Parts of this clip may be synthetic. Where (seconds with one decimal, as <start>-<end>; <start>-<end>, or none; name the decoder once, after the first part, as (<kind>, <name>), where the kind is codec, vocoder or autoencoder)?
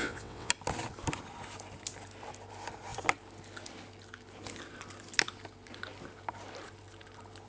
0.0-0.5 (vocoder, WaveNeXt)